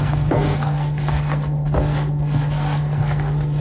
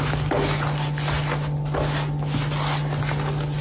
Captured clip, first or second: second